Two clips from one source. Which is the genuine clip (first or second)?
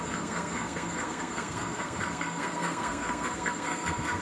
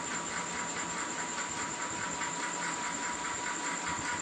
second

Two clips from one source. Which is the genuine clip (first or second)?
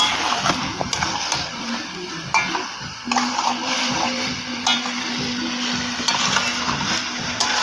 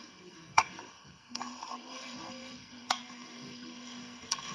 first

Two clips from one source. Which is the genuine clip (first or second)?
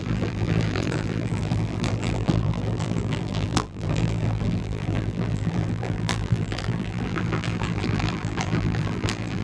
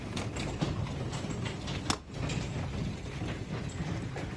second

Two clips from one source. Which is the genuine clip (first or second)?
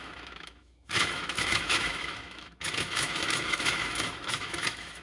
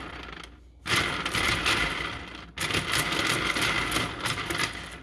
second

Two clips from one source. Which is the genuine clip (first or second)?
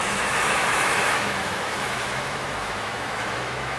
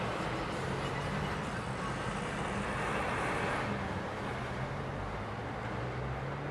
second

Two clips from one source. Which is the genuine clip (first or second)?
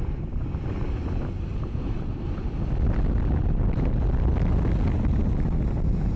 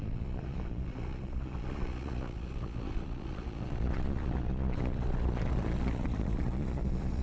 first